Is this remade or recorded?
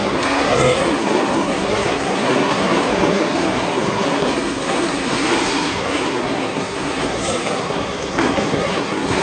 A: remade